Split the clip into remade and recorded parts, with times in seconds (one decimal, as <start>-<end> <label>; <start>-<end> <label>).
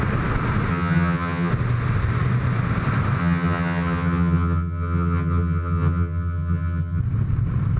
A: 0.0-0.7 recorded; 0.7-1.5 remade; 1.5-3.2 recorded; 3.2-7.0 remade; 7.0-7.8 recorded